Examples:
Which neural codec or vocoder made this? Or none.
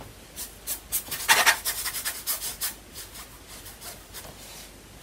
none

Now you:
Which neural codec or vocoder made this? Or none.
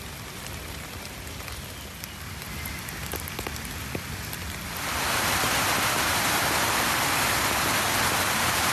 none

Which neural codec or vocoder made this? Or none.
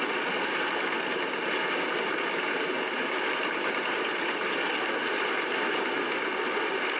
none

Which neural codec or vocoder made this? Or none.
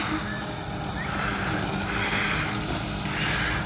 none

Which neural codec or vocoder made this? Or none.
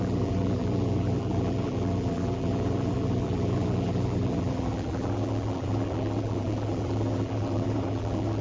vocoder, BigVGAN v2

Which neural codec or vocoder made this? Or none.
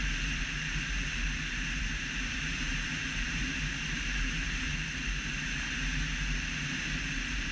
vocoder, BigVGAN v2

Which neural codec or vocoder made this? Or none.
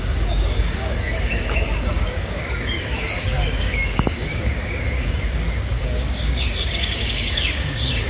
codec, DAC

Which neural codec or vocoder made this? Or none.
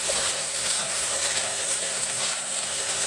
codec, SNAC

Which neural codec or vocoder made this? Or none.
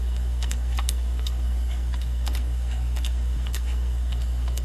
codec, SNAC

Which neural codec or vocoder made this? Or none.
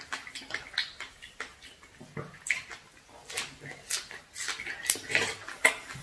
none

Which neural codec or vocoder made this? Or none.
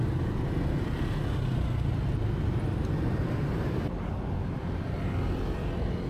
none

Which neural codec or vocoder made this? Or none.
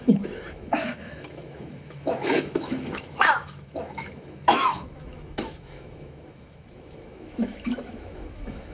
autoencoder, DAC-VAE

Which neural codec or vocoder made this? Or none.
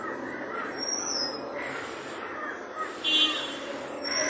none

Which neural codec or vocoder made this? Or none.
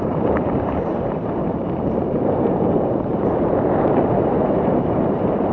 vocoder, BigVGAN v2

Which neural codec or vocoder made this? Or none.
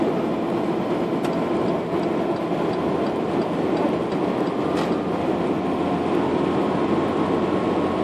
none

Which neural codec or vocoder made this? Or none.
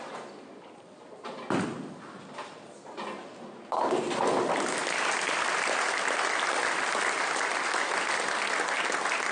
none